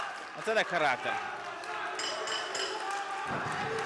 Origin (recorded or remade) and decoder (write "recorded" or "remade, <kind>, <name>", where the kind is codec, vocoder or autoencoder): recorded